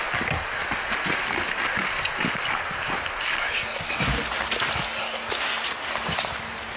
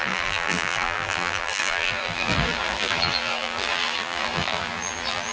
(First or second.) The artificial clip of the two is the second